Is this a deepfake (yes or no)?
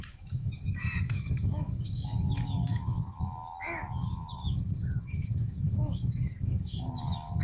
yes